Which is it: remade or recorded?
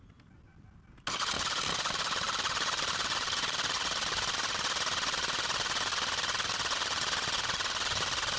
recorded